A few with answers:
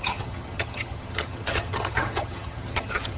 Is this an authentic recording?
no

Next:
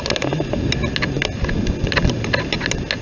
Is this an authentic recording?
yes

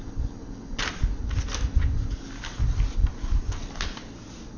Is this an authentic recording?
yes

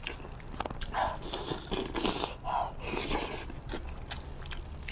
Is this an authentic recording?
yes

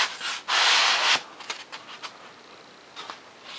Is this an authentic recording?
yes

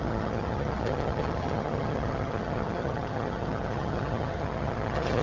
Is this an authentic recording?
no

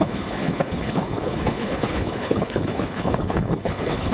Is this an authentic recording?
no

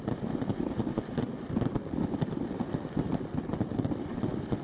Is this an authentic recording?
yes